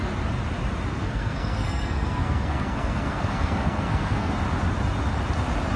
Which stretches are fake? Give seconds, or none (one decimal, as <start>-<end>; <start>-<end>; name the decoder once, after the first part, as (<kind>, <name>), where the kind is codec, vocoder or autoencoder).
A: 0.9-4.3 (codec, SNAC)